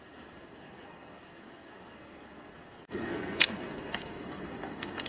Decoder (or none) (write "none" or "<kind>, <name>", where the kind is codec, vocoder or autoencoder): codec, SNAC